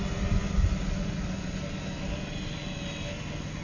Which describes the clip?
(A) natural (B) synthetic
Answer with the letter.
A